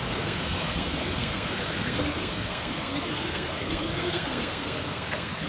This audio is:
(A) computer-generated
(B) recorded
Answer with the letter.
A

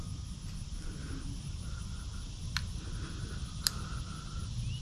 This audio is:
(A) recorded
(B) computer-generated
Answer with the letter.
A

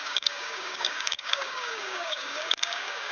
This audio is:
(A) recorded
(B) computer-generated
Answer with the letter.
B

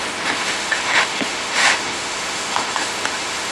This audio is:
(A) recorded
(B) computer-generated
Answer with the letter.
B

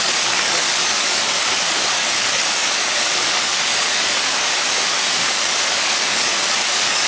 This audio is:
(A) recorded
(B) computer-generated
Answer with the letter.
B